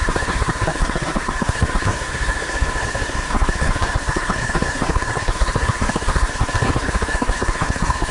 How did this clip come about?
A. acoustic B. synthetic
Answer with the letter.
B